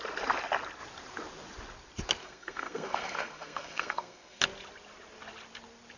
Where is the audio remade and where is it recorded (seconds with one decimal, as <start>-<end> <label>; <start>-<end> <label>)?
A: 0.0-2.2 recorded; 2.2-4.4 remade; 4.4-6.0 recorded